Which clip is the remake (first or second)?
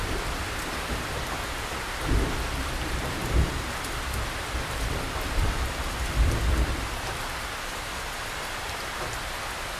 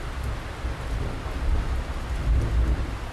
first